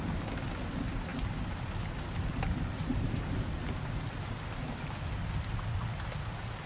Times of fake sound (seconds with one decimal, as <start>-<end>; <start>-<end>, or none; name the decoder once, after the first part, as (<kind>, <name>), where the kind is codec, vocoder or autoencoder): none